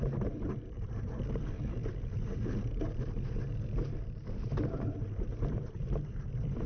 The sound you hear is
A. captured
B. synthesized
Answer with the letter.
B